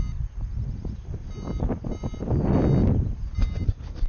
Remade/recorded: recorded